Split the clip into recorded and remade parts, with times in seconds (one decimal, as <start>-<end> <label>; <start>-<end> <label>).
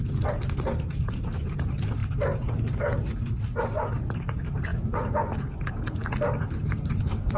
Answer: 0.0-2.0 remade; 2.0-3.3 recorded; 3.3-4.7 remade; 4.7-6.5 recorded; 6.5-7.4 remade